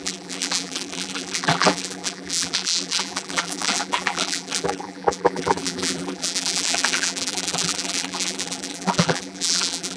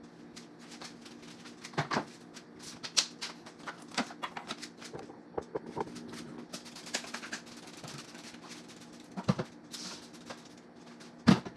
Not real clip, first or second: first